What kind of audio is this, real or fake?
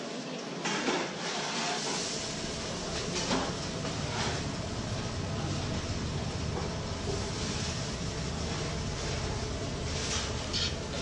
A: real